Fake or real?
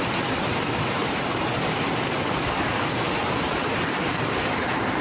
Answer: real